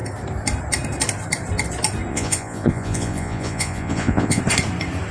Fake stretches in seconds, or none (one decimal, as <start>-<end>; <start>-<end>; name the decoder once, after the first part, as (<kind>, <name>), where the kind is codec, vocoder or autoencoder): 2.1-4.4 (vocoder, Vocos)